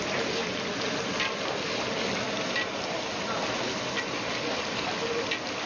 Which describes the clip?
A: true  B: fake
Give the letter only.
A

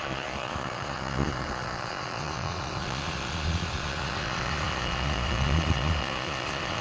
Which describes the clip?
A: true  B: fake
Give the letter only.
B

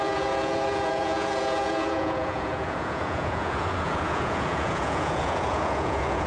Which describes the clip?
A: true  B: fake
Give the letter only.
B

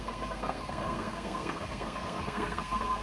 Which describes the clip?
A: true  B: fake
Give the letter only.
B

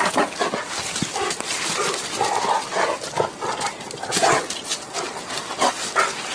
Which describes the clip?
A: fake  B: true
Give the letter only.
B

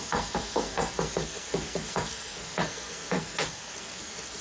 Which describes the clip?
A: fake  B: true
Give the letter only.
A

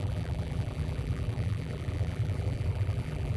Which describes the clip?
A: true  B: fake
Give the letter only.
B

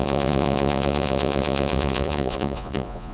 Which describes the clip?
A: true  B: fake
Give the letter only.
B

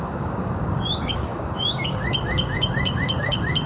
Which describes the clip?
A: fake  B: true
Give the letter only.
A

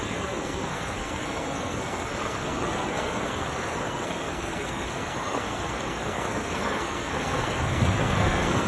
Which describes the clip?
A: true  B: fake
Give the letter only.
B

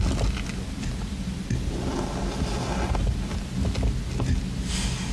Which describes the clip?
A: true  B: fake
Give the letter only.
A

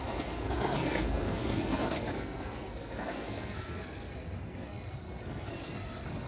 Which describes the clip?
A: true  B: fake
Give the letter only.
B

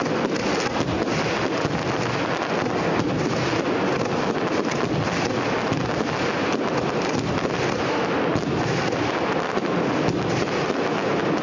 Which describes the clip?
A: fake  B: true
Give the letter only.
B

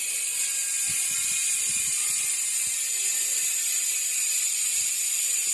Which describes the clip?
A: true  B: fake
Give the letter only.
A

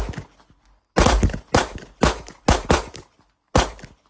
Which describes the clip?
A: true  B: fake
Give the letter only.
A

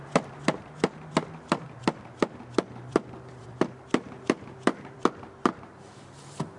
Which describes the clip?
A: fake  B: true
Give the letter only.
A